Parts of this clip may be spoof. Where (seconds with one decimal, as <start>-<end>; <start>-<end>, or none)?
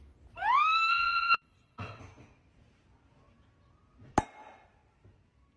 0.9-2.0